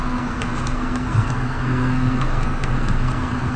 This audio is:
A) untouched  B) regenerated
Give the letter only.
B